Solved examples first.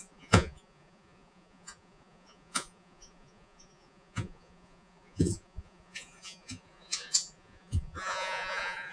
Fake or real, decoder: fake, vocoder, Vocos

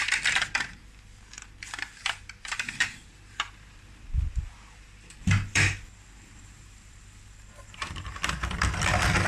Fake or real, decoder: fake, vocoder, BigVGAN v2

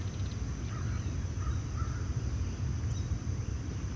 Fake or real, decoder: real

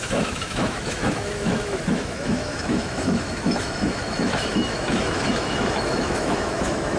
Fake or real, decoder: fake, autoencoder, DAC-VAE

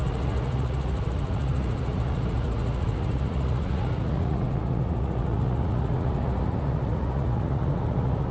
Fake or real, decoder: fake, vocoder, Vocos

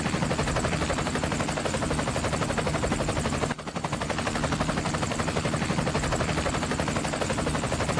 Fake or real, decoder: real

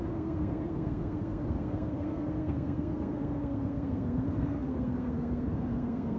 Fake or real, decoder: fake, codec, SNAC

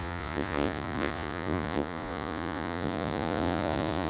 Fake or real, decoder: fake, vocoder, Vocos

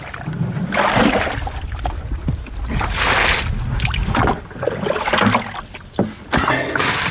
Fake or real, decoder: real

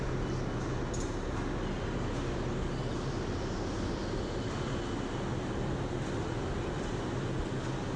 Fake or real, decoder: real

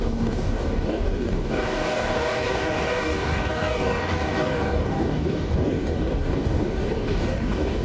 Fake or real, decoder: fake, codec, DAC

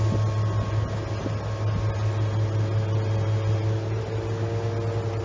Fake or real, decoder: real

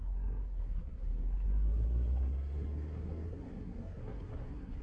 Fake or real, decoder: fake, codec, SNAC